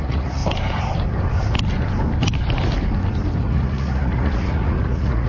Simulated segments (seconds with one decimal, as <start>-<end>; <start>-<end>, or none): 0.0-0.4; 3.4-5.3